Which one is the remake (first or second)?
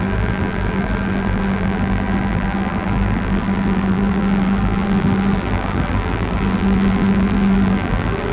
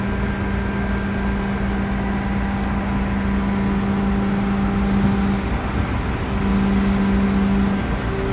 first